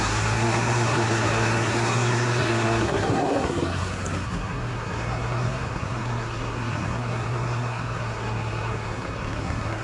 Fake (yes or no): yes